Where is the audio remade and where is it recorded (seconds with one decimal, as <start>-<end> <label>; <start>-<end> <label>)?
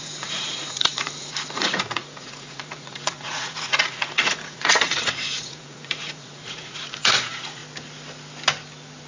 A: 0.0-7.6 remade; 7.6-9.1 recorded